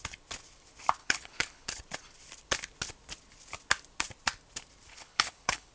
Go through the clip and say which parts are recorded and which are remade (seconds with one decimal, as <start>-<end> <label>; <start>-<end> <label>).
0.0-1.0 recorded; 1.0-1.8 remade; 1.8-4.9 recorded; 4.9-5.7 remade